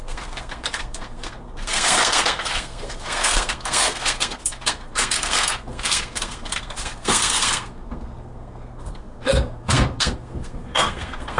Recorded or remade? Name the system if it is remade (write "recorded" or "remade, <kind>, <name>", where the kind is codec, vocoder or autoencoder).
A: remade, codec, SNAC